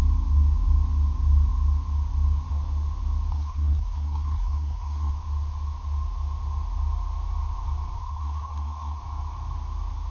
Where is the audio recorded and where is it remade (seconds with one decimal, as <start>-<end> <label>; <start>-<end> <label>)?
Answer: 0.0-3.3 recorded; 3.3-5.1 remade; 5.1-8.0 recorded; 8.0-9.0 remade; 9.0-10.1 recorded